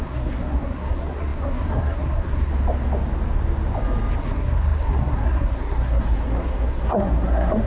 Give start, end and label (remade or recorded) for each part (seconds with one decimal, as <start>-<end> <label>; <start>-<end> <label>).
0.0-2.5 remade; 2.5-4.2 recorded; 4.2-7.7 remade